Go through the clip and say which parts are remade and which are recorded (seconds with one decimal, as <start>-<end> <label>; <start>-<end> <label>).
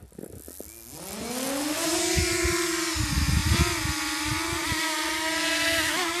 0.0-6.2 recorded